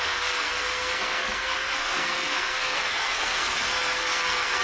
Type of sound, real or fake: fake